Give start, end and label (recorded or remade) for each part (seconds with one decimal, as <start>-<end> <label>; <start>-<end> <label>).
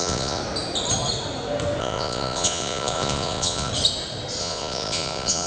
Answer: 0.0-0.4 remade; 0.4-1.8 recorded; 1.8-3.7 remade; 3.7-4.4 recorded; 4.4-5.5 remade